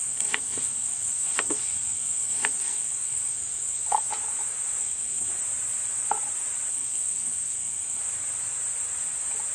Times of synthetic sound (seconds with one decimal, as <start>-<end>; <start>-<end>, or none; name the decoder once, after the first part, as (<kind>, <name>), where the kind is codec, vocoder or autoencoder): 0.0-4.1 (codec, SNAC); 4.8-5.3; 6.7-8.0